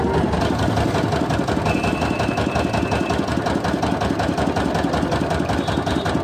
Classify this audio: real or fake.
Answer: real